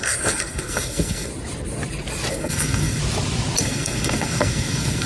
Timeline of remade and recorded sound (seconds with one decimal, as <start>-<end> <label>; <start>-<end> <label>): 0.0-1.3 remade; 1.3-2.3 recorded; 2.3-3.0 remade; 3.0-3.6 recorded; 3.6-5.1 remade